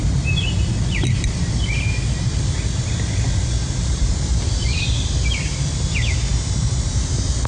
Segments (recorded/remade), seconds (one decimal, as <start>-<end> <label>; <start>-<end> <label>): 0.0-7.5 recorded